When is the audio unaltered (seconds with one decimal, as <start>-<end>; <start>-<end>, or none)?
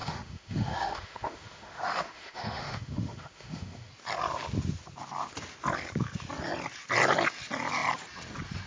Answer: 3.9-8.7